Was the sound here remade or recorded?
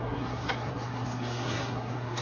remade